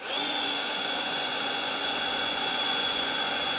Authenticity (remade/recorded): remade